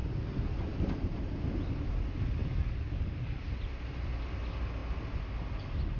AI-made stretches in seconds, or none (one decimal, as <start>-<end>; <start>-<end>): 2.4-3.4